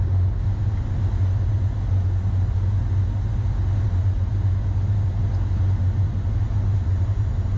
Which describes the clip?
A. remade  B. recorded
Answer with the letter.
B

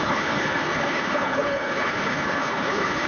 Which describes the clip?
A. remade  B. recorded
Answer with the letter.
A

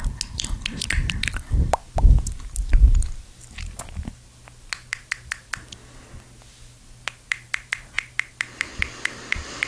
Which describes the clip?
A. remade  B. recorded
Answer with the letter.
B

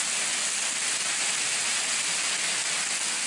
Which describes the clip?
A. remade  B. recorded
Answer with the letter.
B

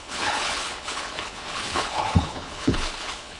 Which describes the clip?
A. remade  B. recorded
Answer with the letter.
A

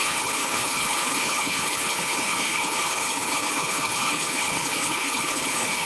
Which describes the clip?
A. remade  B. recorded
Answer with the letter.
A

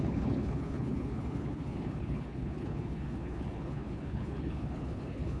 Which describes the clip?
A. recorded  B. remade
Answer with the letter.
B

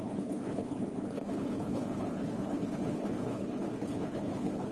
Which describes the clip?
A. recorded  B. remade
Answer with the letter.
B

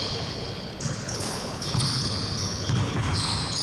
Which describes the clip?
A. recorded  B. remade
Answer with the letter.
B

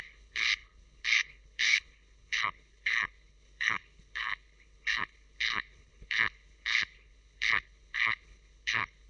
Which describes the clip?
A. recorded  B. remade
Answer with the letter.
B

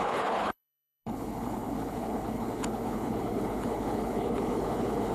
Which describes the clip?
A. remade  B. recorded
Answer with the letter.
A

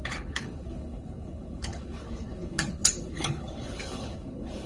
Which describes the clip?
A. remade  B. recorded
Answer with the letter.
A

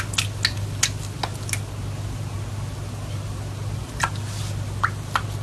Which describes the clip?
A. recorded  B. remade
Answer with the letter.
A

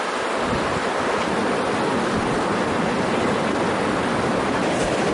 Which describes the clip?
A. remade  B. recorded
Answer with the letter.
B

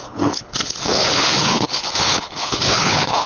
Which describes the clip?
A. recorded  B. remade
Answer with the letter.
B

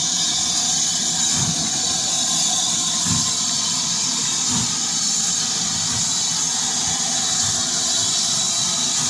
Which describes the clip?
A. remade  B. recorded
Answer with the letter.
B